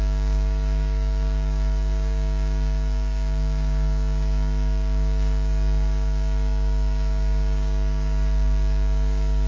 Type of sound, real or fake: fake